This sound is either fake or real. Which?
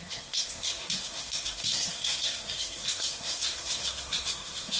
fake